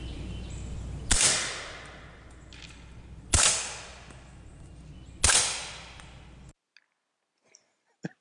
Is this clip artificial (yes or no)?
no